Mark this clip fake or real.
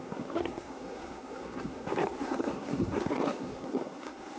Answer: fake